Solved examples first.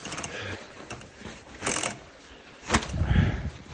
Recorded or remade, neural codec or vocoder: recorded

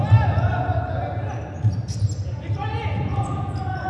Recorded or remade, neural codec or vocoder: recorded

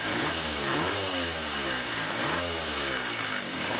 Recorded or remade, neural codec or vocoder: remade, codec, DAC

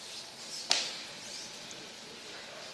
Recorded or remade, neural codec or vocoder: remade, vocoder, BigVGAN v2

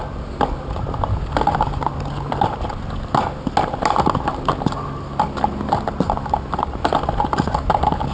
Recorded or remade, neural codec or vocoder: recorded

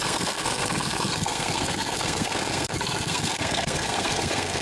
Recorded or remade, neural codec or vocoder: remade, codec, SNAC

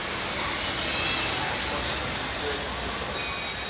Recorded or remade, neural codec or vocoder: recorded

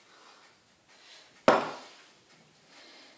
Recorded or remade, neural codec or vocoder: recorded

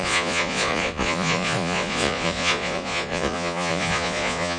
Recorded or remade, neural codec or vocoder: remade, vocoder, Vocos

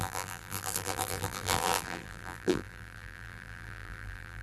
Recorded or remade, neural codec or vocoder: remade, vocoder, BigVGAN v2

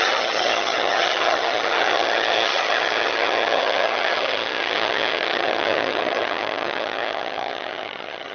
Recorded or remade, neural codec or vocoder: remade, vocoder, HiFi-GAN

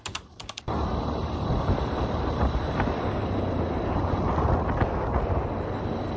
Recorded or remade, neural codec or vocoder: recorded